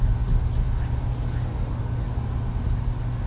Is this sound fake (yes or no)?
no